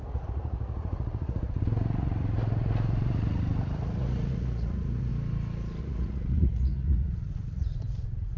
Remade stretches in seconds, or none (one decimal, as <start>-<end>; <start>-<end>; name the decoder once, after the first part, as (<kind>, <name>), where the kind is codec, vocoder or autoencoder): 0.0-5.1 (vocoder, Vocos); 5.8-8.4